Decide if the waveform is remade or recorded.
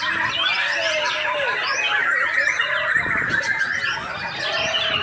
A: recorded